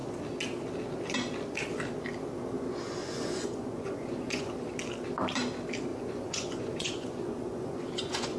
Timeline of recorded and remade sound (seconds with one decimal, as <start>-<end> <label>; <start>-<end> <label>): 0.0-3.0 recorded; 3.0-4.5 remade; 4.5-5.9 recorded; 5.9-8.4 remade